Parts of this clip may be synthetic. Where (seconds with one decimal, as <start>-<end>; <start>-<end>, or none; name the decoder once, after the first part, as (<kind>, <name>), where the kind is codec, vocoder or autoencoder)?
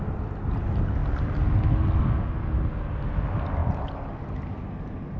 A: none